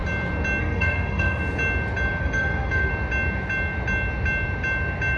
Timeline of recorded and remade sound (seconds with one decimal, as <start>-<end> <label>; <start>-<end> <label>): 0.0-0.6 recorded; 0.6-1.4 remade; 1.4-2.2 recorded; 2.2-2.9 remade; 2.9-5.2 recorded